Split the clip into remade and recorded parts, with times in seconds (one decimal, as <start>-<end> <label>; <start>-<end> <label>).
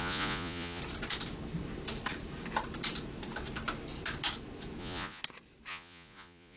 0.0-0.8 remade; 0.8-4.8 recorded; 4.8-5.2 remade; 5.2-5.7 recorded; 5.7-6.6 remade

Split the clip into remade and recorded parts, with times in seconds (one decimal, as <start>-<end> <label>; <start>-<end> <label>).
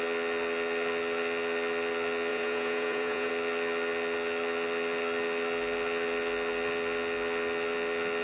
0.0-2.3 recorded; 2.3-3.3 remade; 3.3-8.2 recorded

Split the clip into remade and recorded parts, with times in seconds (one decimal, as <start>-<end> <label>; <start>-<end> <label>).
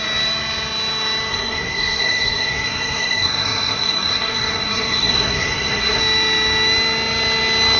0.0-1.3 recorded; 1.3-6.0 remade; 6.0-7.8 recorded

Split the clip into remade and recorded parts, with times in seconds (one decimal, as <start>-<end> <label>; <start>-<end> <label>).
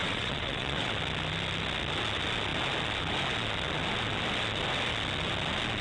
0.0-0.9 remade; 0.9-5.8 recorded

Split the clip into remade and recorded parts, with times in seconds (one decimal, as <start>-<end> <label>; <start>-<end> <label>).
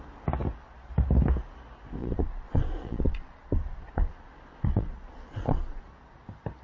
0.0-2.0 recorded; 2.0-5.8 remade; 5.8-6.6 recorded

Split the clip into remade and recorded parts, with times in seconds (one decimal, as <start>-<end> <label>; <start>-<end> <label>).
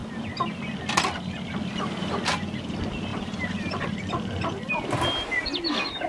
0.0-3.1 recorded; 3.1-4.4 remade; 4.4-6.1 recorded